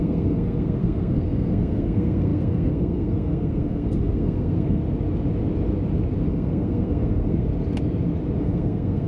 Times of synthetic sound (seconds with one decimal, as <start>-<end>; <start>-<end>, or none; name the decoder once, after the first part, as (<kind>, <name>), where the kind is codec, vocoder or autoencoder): 0.0-4.8 (codec, SNAC); 6.3-7.5; 8.4-9.1